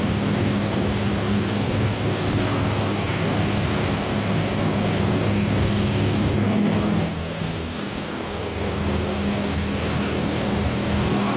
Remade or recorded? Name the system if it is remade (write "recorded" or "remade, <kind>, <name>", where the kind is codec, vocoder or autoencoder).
remade, codec, DAC